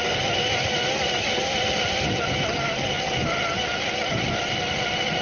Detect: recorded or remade recorded